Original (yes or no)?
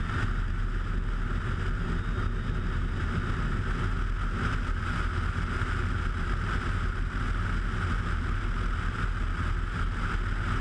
yes